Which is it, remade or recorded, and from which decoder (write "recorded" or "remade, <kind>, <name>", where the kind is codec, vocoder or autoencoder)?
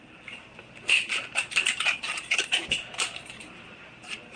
remade, vocoder, BigVGAN v2